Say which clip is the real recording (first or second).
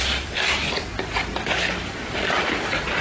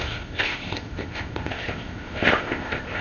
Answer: first